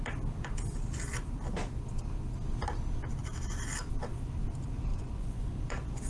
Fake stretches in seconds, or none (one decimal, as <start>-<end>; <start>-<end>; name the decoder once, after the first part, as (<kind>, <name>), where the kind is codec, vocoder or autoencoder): 4.9-6.1 (vocoder, Vocos)